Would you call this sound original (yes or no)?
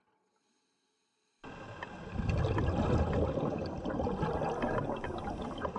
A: yes